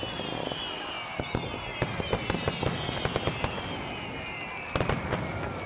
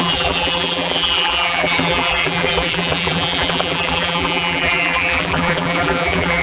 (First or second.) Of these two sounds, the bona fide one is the first